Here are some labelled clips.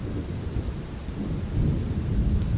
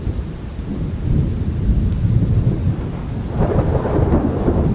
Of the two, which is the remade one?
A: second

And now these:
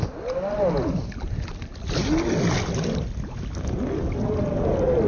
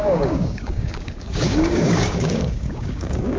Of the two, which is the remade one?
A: second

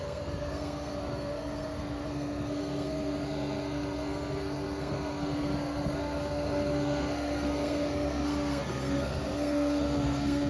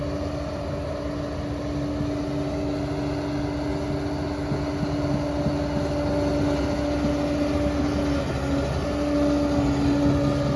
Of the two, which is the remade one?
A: first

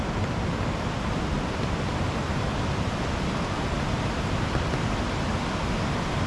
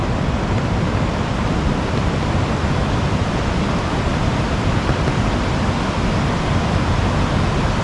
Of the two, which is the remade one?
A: second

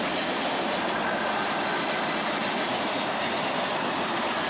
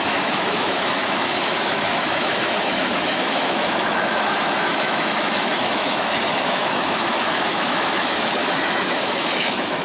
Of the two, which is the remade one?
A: second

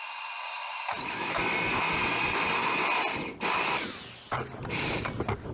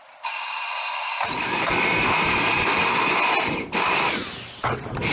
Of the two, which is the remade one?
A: second